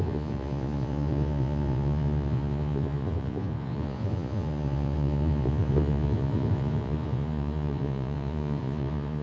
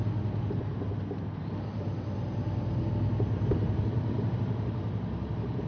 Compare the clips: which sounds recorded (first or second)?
second